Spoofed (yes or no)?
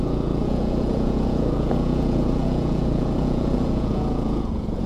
yes